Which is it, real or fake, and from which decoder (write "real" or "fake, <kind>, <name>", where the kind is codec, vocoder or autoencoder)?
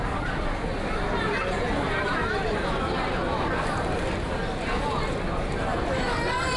real